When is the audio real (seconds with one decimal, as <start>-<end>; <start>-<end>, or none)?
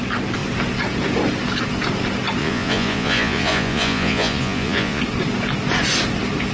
0.0-2.4; 5.0-6.5